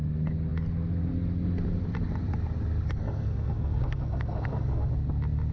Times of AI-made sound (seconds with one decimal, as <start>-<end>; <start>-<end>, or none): 3.0-4.9